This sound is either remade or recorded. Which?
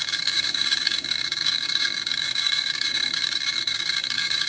remade